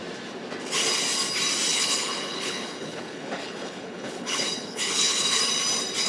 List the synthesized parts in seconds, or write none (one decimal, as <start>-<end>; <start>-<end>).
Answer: 1.7-5.4